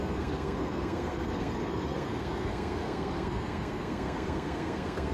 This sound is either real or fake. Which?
fake